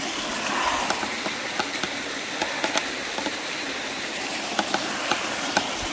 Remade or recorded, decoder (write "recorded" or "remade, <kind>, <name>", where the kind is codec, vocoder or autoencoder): remade, vocoder, BigVGAN v2